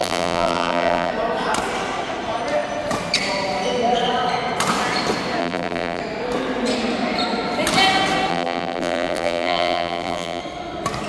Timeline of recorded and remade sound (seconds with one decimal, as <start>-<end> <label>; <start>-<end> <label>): 0.0-1.1 remade; 1.1-5.4 recorded; 5.4-6.0 remade; 6.0-8.3 recorded; 8.3-10.4 remade; 10.4-11.1 recorded